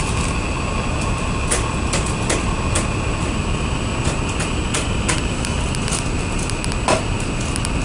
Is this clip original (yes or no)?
yes